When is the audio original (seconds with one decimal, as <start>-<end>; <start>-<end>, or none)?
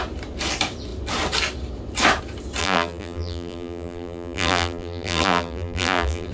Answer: 0.0-2.6